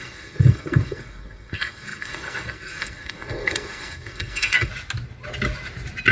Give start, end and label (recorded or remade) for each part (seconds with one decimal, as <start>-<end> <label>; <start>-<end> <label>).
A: 0.0-4.7 remade; 4.7-6.1 recorded